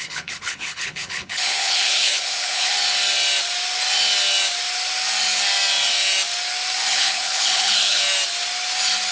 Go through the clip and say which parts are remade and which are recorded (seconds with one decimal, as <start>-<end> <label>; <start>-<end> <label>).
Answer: 0.0-2.7 remade; 2.7-6.9 recorded; 6.9-8.0 remade; 8.0-9.1 recorded